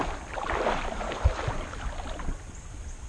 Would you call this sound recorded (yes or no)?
yes